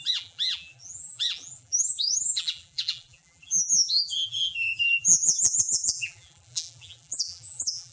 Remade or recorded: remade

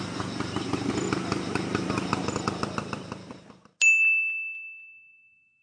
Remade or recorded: recorded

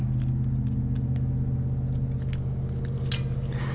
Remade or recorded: recorded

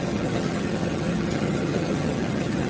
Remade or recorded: remade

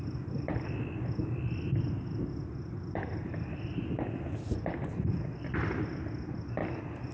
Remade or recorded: recorded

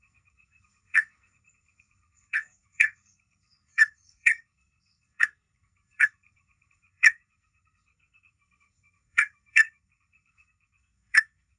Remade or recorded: remade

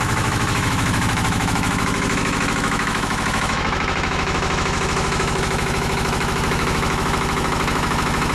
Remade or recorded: remade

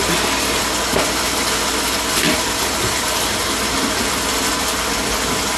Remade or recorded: recorded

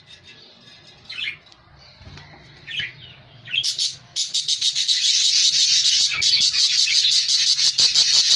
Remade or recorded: recorded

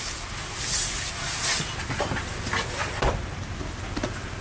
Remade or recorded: recorded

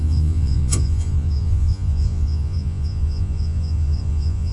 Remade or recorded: remade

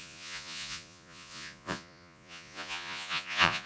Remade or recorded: remade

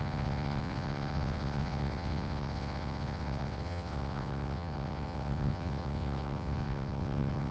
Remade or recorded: remade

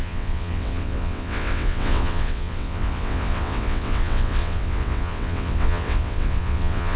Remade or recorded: remade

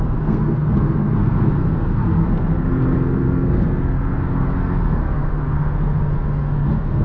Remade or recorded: remade